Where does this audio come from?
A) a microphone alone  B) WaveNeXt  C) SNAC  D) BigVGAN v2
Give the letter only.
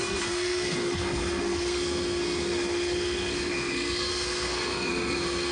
C